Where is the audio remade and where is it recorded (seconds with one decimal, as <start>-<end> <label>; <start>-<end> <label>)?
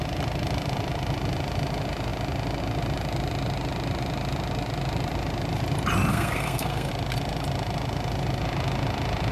0.0-6.1 recorded; 6.1-6.9 remade; 6.9-9.3 recorded